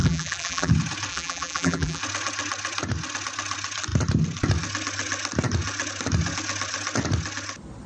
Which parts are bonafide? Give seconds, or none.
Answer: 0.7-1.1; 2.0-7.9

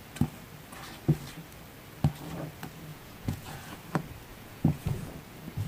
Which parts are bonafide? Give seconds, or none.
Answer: 0.0-2.9; 3.8-4.3; 5.1-5.7

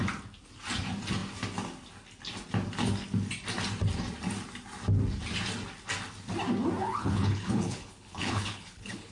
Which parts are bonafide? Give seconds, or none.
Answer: 0.0-6.8

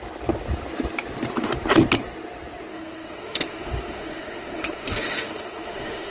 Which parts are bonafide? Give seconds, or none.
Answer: 0.0-2.7

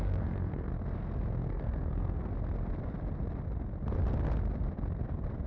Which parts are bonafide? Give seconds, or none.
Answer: 0.7-1.5; 2.3-5.5

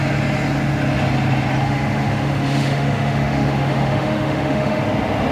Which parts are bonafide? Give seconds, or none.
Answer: 0.0-1.6; 4.8-5.3

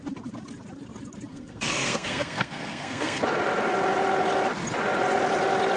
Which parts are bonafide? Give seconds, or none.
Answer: 0.0-1.3; 3.2-5.8

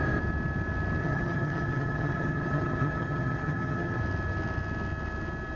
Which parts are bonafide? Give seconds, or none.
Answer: 0.0-1.0; 4.0-5.6